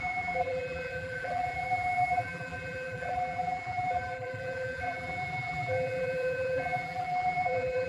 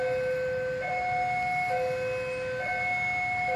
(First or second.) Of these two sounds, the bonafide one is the second